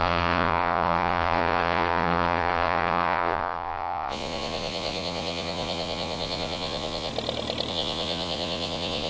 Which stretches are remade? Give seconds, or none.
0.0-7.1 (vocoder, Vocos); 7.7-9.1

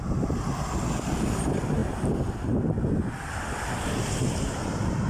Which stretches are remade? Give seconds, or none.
none

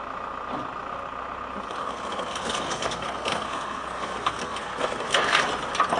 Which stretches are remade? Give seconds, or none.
1.8-5.4 (codec, SNAC)

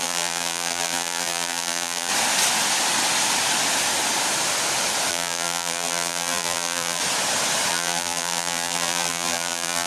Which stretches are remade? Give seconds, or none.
0.0-2.1 (vocoder, BigVGAN v2); 5.1-7.0; 7.7-9.9

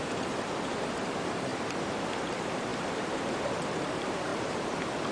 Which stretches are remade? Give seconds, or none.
0.0-1.5 (vocoder, BigVGAN v2); 2.0-4.3